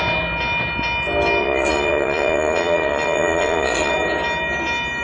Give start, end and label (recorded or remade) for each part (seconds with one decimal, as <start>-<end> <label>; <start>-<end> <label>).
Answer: 0.0-1.4 recorded; 1.4-3.9 remade; 3.9-5.0 recorded